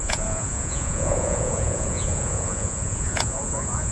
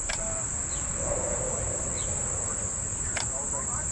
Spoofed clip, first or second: first